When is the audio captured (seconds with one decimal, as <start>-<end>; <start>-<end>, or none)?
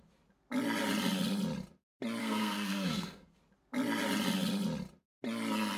0.0-2.2; 3.4-5.8